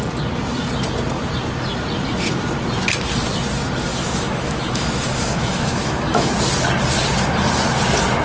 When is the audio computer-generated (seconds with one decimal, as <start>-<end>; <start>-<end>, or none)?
3.9-6.3